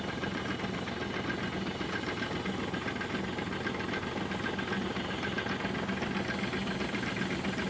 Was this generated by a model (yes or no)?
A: no